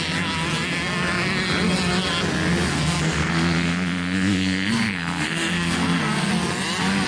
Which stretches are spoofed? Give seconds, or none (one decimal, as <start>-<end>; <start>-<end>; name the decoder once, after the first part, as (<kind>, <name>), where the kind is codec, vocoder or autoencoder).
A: 2.7-6.3 (codec, SNAC)